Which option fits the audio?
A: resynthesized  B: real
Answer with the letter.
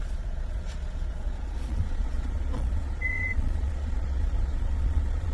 A